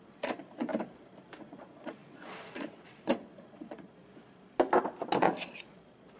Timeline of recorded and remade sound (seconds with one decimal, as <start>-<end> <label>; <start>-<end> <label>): 0.0-0.7 remade; 0.7-1.4 recorded; 1.4-4.0 remade; 4.0-5.2 recorded; 5.2-6.2 remade